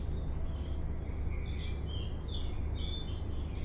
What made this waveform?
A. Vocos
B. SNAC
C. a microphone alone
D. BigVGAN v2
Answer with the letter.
C